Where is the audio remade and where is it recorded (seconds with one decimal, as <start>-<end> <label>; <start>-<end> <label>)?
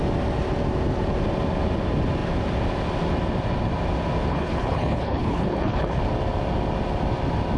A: 0.0-4.3 recorded; 4.3-6.0 remade; 6.0-7.6 recorded